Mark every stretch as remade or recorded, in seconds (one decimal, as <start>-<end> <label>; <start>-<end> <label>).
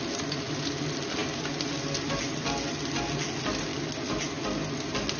0.0-5.2 recorded